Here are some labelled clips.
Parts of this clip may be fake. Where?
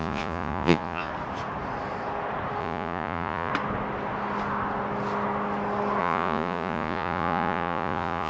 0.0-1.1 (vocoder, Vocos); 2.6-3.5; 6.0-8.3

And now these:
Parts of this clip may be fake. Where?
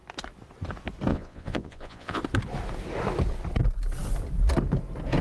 1.1-2.2 (vocoder, Vocos)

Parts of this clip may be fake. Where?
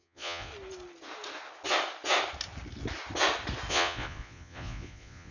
0.0-0.5 (vocoder, Vocos); 3.7-5.3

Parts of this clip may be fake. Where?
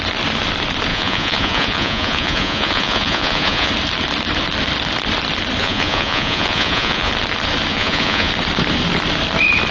0.9-3.7 (vocoder, Vocos); 5.6-7.1; 7.7-8.3